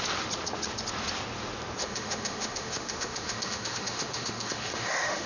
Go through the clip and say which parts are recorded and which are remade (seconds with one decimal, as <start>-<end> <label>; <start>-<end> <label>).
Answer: 0.0-1.8 recorded; 1.8-5.3 remade